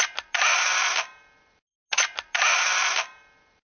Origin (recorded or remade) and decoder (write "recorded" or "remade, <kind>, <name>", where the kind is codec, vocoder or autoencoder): recorded